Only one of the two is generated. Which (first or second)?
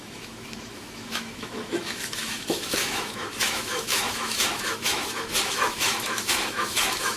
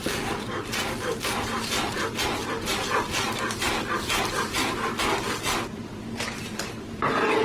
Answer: first